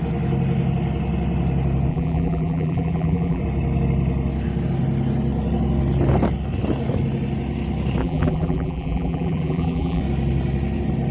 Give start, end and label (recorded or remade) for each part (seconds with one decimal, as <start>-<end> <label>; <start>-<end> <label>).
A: 0.0-1.9 recorded; 1.9-3.4 remade; 3.4-8.0 recorded; 8.0-10.0 remade; 10.0-11.1 recorded